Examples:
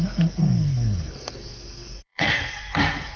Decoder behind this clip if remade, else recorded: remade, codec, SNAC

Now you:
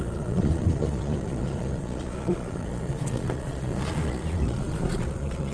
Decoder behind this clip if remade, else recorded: remade, vocoder, Vocos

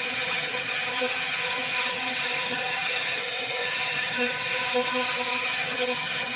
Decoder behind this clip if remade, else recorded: remade, vocoder, HiFi-GAN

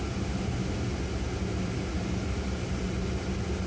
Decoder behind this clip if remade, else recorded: recorded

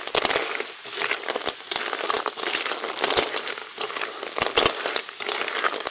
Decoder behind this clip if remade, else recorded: recorded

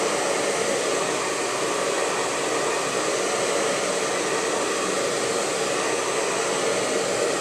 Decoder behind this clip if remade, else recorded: recorded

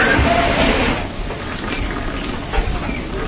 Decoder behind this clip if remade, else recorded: recorded